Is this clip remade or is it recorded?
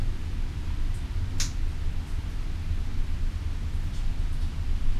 recorded